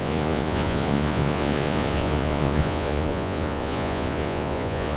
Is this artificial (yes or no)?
yes